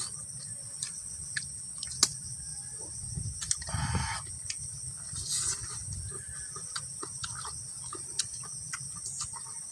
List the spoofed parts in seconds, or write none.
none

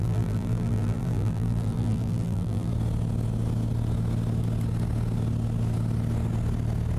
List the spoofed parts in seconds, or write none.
0.0-2.7 (vocoder, BigVGAN v2)

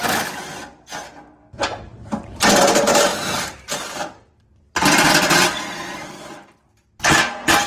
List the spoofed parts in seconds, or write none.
3.1-5.1 (vocoder, BigVGAN v2)

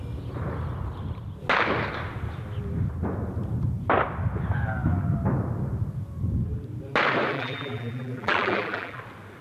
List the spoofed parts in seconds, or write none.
7.3-9.0 (vocoder, BigVGAN v2)

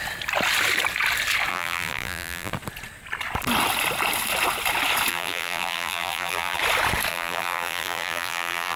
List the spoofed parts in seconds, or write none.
1.5-2.5 (vocoder, BigVGAN v2); 5.1-6.6; 7.1-8.8

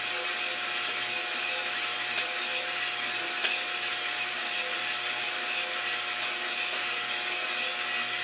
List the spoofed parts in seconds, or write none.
1.6-2.6 (vocoder, BigVGAN v2); 3.9-5.3